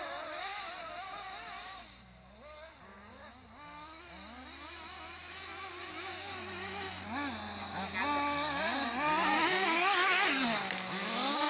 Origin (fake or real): real